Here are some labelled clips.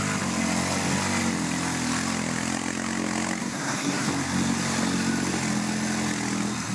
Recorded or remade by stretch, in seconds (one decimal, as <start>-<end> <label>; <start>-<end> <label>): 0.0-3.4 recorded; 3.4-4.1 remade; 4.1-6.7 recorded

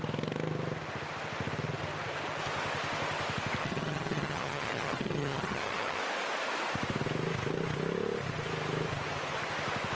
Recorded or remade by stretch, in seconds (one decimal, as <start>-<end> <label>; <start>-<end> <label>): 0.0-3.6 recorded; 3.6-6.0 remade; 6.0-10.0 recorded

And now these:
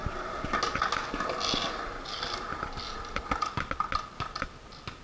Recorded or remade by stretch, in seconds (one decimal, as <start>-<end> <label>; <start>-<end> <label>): 0.0-5.0 recorded

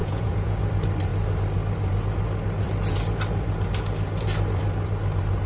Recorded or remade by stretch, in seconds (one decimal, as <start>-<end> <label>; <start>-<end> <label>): 0.0-0.7 remade; 0.7-5.5 recorded